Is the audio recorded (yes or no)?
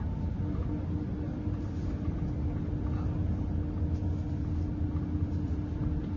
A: yes